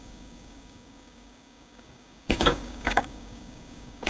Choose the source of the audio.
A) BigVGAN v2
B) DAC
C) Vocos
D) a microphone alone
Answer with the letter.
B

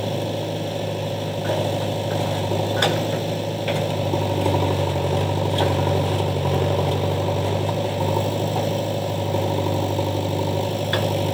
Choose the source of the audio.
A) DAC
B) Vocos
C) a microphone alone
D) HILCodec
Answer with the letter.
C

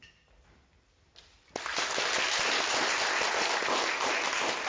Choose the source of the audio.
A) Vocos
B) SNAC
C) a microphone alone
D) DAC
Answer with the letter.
C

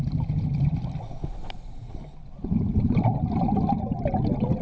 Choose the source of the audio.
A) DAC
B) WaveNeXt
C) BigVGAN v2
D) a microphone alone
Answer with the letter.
D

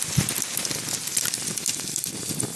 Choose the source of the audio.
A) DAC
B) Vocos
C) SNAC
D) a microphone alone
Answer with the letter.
D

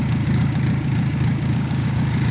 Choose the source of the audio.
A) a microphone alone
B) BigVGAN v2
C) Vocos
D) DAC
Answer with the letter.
D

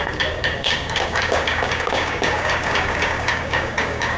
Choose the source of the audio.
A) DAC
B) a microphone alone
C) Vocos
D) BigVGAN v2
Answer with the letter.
A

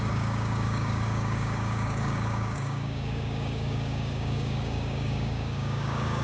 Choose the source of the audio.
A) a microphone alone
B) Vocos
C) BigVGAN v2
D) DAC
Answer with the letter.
D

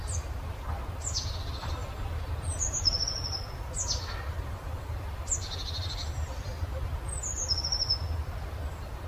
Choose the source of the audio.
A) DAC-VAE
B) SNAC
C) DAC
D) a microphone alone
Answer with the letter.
D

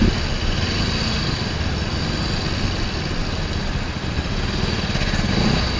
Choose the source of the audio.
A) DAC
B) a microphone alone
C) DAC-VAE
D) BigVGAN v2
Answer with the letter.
B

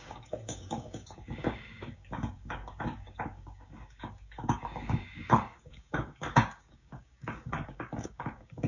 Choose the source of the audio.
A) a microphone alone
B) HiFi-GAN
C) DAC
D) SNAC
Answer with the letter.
C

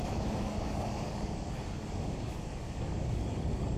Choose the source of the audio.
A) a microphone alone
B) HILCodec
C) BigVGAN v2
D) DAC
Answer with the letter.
D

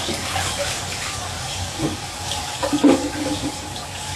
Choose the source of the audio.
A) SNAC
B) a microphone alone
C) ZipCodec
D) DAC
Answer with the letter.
D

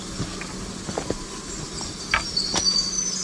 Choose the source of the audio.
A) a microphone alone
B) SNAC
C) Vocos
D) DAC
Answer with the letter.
A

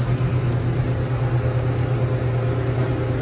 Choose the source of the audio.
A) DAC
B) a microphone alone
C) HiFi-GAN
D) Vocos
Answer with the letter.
B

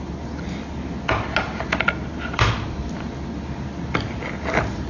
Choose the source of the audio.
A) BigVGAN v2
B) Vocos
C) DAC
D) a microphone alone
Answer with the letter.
D